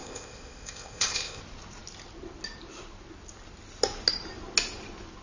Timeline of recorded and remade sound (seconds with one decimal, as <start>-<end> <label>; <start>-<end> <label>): 0.0-1.4 remade; 1.4-5.2 recorded